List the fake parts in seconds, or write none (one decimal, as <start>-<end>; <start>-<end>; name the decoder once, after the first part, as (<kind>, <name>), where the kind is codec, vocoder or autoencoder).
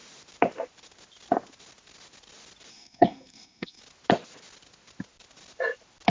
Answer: 2.7-3.8 (codec, SNAC)